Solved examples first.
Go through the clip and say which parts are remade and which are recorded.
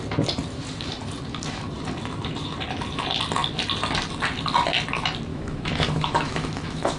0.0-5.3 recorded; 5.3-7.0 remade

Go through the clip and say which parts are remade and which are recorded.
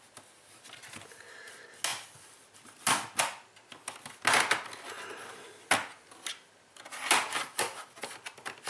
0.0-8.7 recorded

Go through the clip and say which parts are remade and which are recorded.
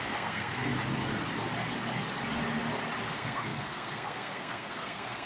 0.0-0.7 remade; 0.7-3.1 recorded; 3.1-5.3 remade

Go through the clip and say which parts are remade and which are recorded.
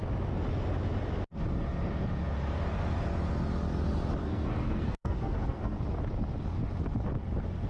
0.0-4.2 recorded; 4.2-5.8 remade; 5.8-7.7 recorded